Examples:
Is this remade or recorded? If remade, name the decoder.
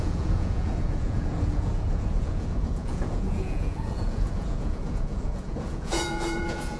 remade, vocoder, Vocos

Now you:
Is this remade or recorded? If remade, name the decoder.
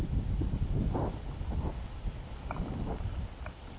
recorded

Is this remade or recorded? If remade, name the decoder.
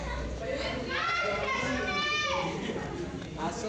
remade, vocoder, BigVGAN v2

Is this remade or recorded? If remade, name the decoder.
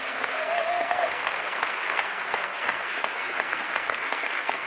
remade, codec, SNAC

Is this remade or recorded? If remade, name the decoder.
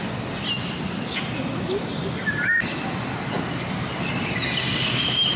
recorded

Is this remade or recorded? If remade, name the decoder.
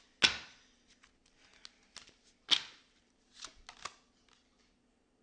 recorded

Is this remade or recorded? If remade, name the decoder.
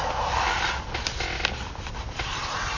recorded